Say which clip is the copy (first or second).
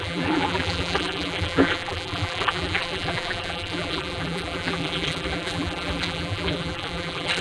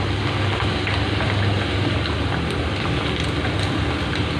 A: first